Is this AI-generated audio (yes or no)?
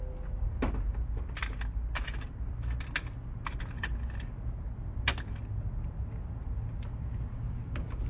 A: no